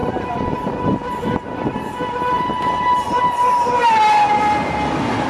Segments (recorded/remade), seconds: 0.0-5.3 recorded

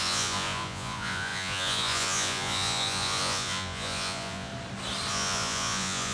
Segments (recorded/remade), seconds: 0.0-4.5 remade; 4.5-5.1 recorded; 5.1-6.1 remade

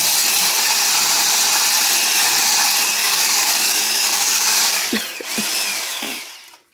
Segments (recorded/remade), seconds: 0.0-3.0 recorded; 3.0-4.9 remade; 4.9-5.7 recorded; 5.7-6.3 remade; 6.3-6.7 recorded

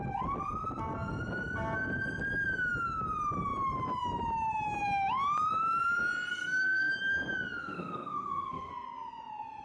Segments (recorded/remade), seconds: 0.0-6.3 recorded; 6.3-6.9 remade; 6.9-7.6 recorded; 7.6-8.7 remade; 8.7-9.6 recorded

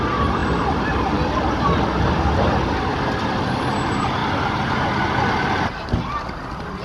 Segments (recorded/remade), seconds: 0.0-6.8 recorded